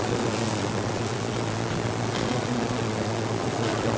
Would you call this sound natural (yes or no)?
no